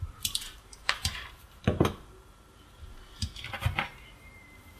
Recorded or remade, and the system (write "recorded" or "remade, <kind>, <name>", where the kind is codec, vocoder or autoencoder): remade, vocoder, BigVGAN v2